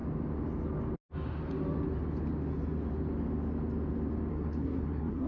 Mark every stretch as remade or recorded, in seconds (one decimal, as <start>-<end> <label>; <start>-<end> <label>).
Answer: 0.0-4.3 recorded; 4.3-5.3 remade